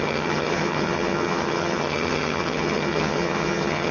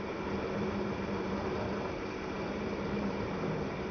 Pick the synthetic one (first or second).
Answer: first